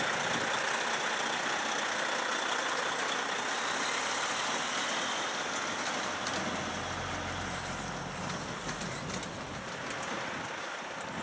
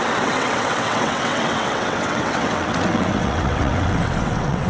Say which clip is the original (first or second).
first